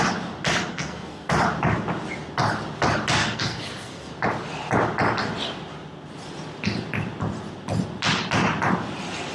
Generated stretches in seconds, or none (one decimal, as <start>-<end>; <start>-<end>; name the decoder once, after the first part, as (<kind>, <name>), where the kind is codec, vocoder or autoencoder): 0.7-1.3 (codec, SNAC); 3.2-4.1